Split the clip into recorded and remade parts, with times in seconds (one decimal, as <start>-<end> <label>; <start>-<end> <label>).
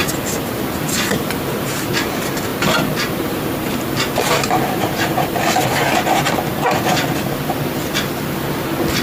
0.0-1.9 remade; 1.9-2.5 recorded; 2.5-5.4 remade; 5.4-9.0 recorded